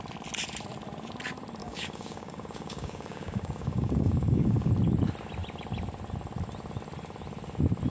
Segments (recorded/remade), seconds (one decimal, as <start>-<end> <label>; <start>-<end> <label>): 0.0-1.6 recorded; 1.6-4.7 remade; 4.7-7.9 recorded